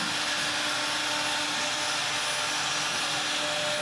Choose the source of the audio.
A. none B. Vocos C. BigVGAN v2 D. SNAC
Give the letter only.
A